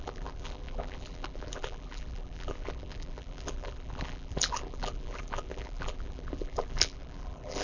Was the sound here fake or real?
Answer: fake